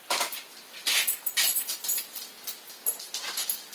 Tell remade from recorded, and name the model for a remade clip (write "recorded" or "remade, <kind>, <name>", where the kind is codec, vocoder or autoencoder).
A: recorded